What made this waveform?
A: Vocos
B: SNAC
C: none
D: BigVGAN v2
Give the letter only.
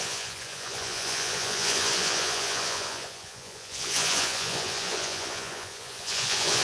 A